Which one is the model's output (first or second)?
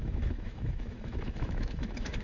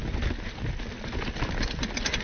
first